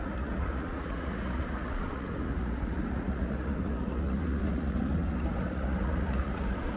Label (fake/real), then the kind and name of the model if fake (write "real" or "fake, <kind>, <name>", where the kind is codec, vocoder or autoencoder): fake, vocoder, Vocos